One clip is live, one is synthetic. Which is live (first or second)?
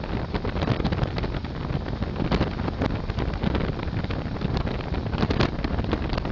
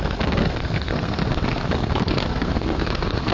first